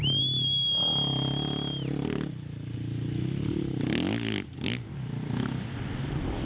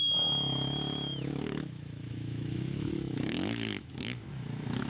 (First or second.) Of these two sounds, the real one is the first